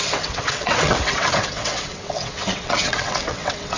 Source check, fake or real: fake